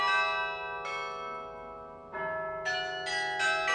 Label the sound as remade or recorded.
recorded